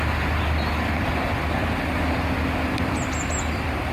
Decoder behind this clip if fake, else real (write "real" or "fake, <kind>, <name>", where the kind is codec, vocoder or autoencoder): real